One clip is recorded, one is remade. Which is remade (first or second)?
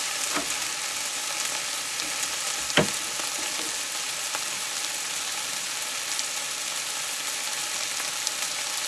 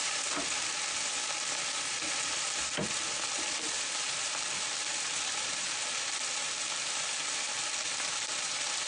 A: second